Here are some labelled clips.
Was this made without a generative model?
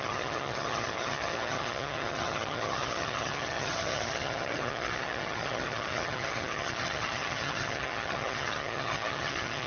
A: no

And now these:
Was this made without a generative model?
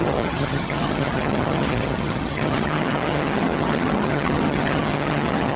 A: no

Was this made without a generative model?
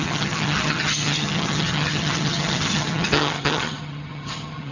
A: no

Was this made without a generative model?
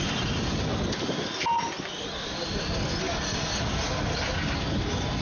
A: yes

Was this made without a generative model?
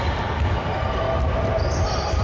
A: yes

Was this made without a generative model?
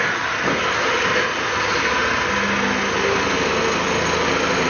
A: yes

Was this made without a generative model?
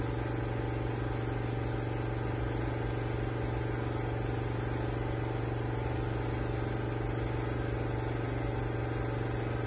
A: yes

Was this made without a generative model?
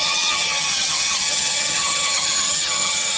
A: no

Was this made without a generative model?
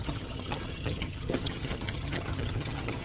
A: no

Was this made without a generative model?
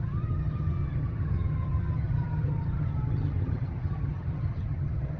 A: no